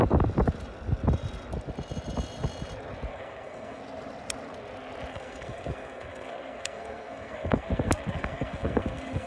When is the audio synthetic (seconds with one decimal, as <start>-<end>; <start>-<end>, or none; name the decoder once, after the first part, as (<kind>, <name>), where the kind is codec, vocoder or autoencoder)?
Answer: 3.1-3.8 (codec, SNAC); 5.1-9.3